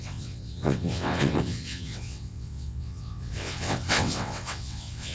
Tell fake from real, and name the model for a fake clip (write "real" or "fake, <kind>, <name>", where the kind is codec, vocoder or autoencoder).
fake, vocoder, WaveNeXt